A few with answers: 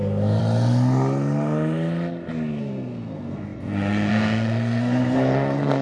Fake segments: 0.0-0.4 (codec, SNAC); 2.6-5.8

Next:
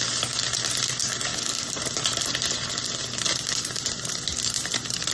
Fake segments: none